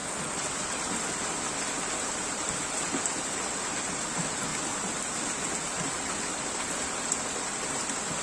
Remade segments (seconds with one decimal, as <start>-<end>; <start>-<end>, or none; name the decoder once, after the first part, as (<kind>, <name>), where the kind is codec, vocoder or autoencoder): none